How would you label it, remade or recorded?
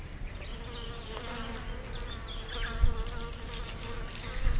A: recorded